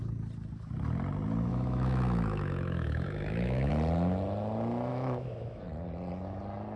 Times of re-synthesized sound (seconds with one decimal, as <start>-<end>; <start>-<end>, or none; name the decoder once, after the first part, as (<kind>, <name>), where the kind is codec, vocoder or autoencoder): 1.5-3.7 (autoencoder, DAC-VAE); 4.9-5.6